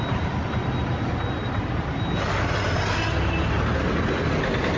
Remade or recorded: recorded